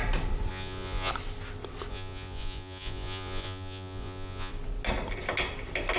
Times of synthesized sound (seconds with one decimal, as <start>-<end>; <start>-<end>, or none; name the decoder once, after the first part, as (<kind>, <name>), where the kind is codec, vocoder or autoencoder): 0.5-1.1 (vocoder, Vocos); 1.9-4.5